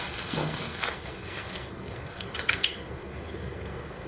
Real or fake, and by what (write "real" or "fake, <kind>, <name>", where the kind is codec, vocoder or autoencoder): fake, codec, SNAC